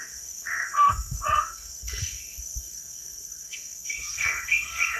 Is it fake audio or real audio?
fake